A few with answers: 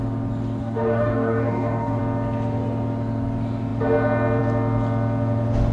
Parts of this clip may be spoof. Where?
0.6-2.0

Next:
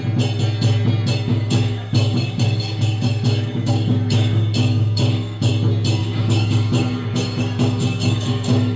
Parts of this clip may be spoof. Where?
1.3-5.5; 6.0-8.8

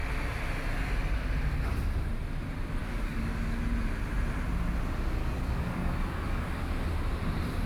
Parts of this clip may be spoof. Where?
2.8-3.6; 5.2-6.7

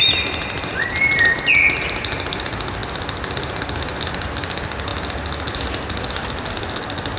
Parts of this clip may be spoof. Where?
none

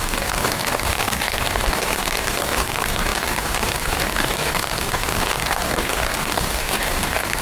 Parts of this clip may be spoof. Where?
0.0-7.4

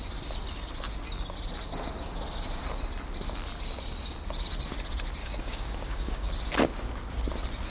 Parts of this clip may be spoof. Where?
5.2-6.3

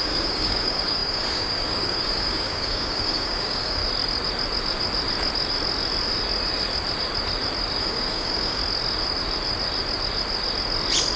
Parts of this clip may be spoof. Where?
0.0-3.8; 7.8-8.6

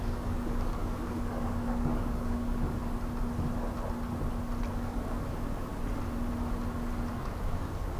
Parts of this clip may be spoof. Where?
0.0-2.8; 4.7-5.7; 7.1-8.0